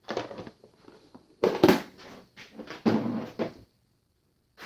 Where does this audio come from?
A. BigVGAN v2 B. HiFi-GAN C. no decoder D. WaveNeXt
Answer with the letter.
C